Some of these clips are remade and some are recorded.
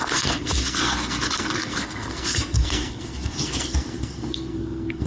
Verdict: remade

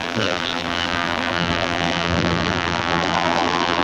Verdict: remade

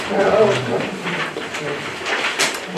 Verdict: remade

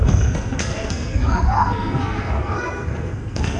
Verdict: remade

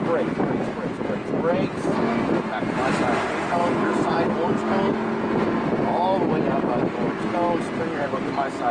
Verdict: recorded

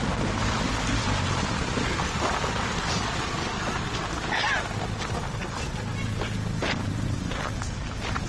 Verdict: remade